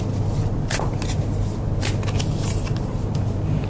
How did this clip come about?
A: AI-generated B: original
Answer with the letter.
B